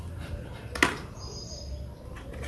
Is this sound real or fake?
real